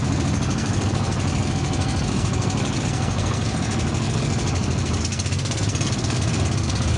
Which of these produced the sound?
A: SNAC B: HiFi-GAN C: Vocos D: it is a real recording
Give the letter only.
A